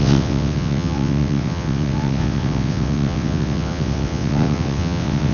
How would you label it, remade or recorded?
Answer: remade